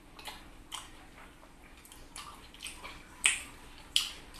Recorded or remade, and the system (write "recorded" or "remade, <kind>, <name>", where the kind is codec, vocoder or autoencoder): recorded